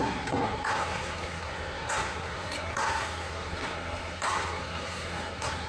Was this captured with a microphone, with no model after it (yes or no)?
no